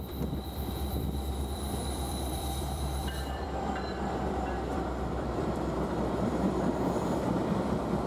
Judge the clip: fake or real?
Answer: fake